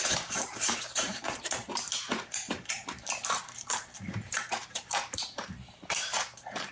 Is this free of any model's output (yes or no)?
no